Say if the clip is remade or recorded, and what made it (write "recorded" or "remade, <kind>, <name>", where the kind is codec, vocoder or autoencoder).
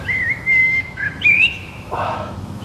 remade, autoencoder, DAC-VAE